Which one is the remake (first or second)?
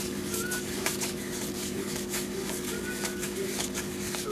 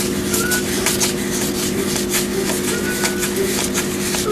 first